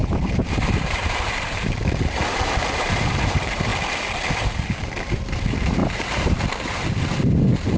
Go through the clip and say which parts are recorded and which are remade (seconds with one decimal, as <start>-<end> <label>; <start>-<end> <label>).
0.0-3.7 remade; 3.7-4.7 recorded; 4.7-7.8 remade